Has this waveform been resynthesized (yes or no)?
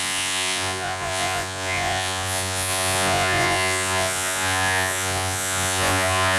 yes